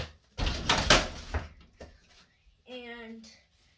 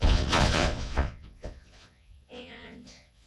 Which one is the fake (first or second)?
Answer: second